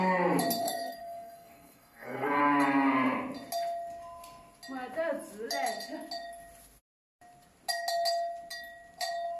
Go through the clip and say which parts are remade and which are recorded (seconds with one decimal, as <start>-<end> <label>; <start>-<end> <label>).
0.0-0.6 recorded; 0.6-2.4 remade; 2.4-9.4 recorded